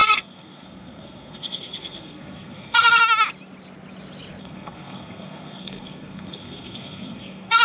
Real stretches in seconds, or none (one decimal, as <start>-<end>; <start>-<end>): 3.0-4.4

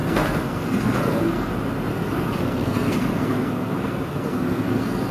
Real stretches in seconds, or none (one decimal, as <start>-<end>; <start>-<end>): 1.5-1.9

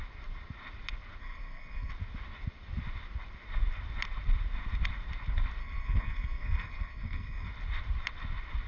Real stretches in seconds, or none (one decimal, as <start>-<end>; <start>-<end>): 0.0-1.2; 1.9-5.6; 7.5-8.7

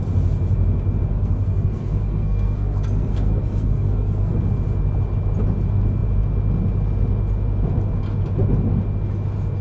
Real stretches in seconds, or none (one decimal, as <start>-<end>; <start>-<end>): 0.0-1.1; 4.4-9.6

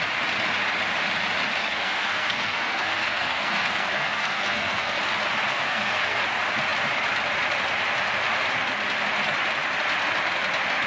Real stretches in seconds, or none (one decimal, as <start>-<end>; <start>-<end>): 0.0-1.6; 5.0-5.5; 6.2-10.9